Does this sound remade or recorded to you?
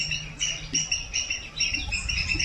recorded